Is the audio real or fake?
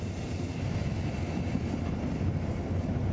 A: real